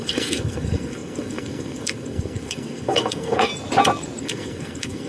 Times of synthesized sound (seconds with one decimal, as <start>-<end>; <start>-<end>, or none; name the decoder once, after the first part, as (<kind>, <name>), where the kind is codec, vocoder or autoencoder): 0.0-3.5 (codec, SNAC); 4.2-5.1